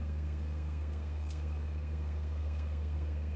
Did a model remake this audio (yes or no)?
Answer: yes